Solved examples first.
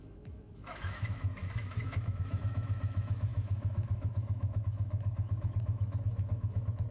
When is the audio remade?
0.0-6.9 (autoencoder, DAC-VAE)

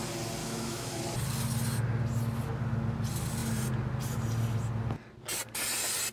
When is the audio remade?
0.4-1.0 (autoencoder, DAC-VAE)

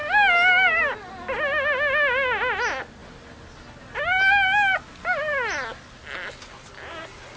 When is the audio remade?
none

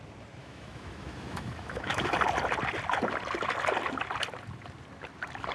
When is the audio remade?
0.4-2.1 (autoencoder, DAC-VAE)